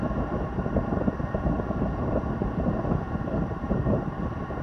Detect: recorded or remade remade